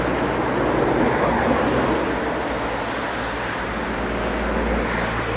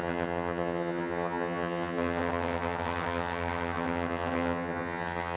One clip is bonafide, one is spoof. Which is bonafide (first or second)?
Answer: first